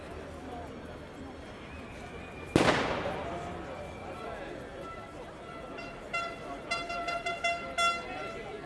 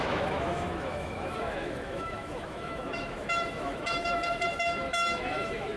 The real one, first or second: first